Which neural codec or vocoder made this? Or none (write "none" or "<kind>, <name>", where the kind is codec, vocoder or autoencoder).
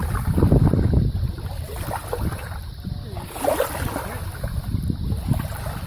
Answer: none